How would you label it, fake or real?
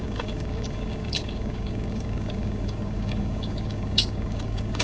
fake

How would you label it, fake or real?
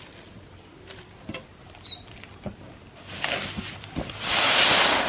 real